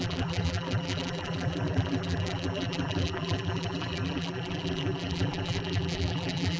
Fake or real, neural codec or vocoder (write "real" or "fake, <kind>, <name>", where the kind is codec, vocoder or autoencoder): fake, vocoder, BigVGAN v2